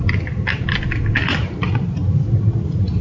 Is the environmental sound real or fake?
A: real